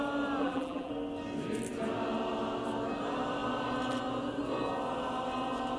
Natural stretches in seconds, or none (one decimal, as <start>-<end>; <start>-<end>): 0.0-0.4; 0.9-5.8